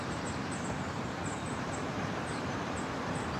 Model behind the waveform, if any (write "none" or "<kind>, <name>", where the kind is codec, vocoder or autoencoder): vocoder, BigVGAN v2